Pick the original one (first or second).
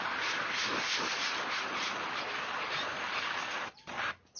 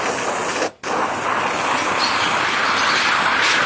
second